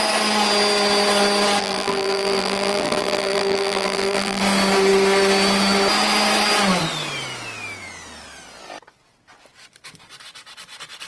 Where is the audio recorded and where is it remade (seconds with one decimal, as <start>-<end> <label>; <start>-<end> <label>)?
0.0-1.6 recorded; 1.6-4.4 remade; 4.4-11.1 recorded